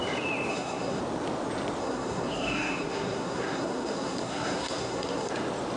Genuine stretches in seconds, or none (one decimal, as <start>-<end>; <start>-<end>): 0.0-0.5; 1.0-1.8; 5.3-5.8